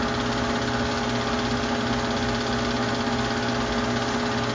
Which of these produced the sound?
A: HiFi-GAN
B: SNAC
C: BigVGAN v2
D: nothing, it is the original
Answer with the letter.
D